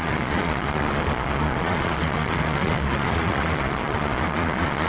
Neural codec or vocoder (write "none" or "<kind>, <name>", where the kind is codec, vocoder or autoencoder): vocoder, Vocos